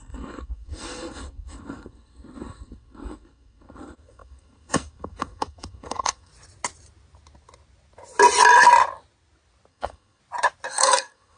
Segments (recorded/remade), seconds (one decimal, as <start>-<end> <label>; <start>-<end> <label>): 0.0-6.3 remade; 6.3-9.7 recorded; 9.7-10.2 remade; 10.2-10.7 recorded; 10.7-11.4 remade